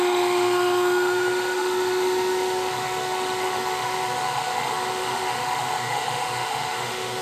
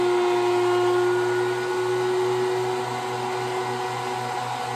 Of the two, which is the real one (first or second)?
second